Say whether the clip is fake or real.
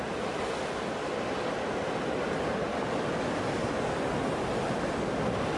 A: real